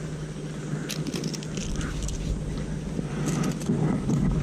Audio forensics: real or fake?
real